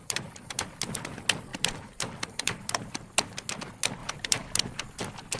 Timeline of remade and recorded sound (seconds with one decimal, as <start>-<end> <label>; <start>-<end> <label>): 0.0-0.8 remade; 0.8-1.5 recorded; 1.5-3.2 remade; 3.2-4.0 recorded; 4.0-5.0 remade; 5.0-5.4 recorded